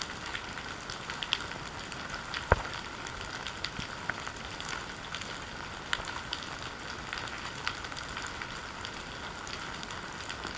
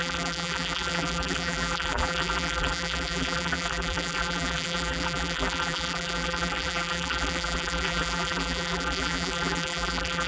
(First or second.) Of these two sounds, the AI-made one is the second